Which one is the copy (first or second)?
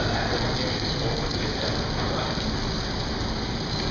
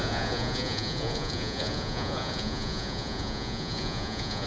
second